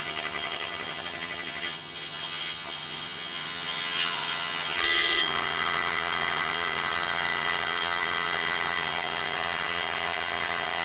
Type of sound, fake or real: fake